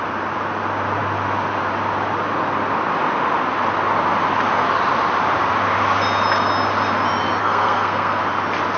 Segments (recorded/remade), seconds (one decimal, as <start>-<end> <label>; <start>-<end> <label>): 0.0-7.4 recorded; 7.4-8.2 remade; 8.2-8.8 recorded